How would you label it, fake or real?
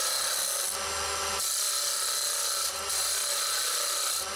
real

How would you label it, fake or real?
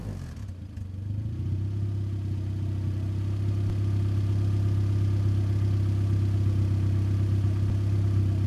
real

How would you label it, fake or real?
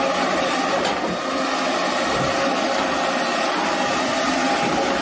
real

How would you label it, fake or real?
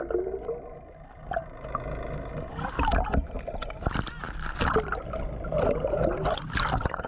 real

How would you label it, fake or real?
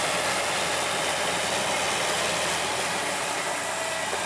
real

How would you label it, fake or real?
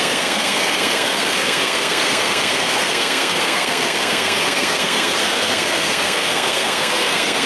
fake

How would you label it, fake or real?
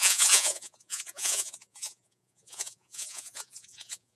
fake